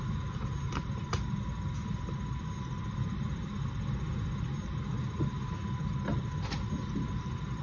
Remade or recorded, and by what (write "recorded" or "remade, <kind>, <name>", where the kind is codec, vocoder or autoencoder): recorded